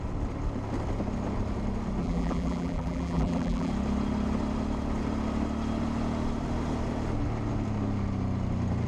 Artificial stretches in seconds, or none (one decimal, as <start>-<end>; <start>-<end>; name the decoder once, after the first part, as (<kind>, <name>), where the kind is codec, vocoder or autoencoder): 2.0-3.7 (vocoder, BigVGAN v2)